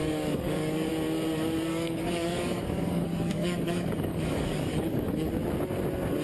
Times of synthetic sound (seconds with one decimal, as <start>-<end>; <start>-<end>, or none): 0.0-0.9; 1.7-5.3